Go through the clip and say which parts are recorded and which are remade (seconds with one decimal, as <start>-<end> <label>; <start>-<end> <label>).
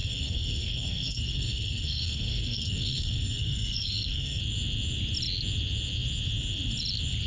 0.0-4.4 remade; 4.4-7.3 recorded